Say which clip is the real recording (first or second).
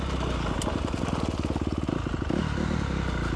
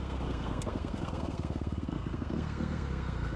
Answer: first